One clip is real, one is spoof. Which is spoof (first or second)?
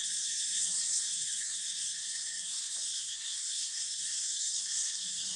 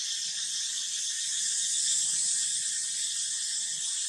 first